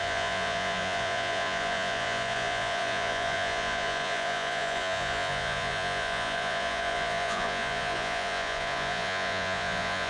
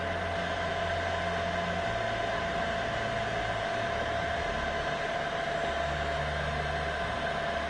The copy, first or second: first